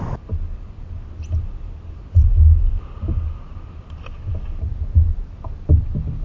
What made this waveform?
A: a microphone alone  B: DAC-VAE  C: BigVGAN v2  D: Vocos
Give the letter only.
A